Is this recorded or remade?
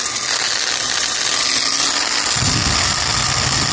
recorded